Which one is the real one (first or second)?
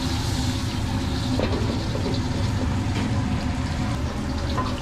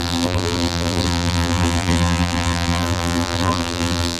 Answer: first